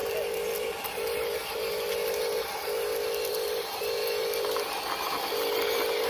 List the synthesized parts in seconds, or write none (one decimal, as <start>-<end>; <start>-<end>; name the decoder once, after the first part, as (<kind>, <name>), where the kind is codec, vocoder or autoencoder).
0.0-1.9 (vocoder, BigVGAN v2); 3.3-5.2